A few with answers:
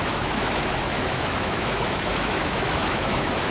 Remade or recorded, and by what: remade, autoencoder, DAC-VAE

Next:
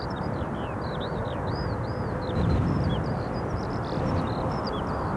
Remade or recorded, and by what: recorded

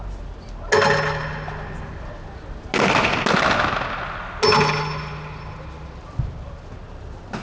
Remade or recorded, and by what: recorded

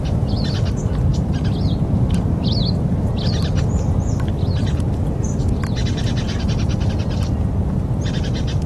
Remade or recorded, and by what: recorded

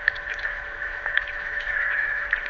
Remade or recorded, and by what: remade, autoencoder, DAC-VAE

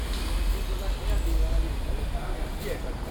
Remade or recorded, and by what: recorded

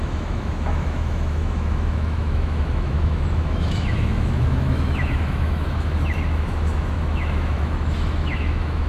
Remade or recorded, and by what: remade, autoencoder, DAC-VAE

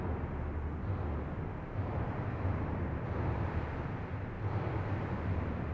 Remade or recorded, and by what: recorded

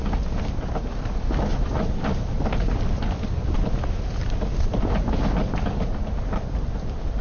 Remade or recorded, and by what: recorded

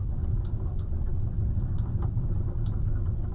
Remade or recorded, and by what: recorded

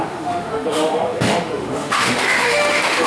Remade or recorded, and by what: remade, autoencoder, DAC-VAE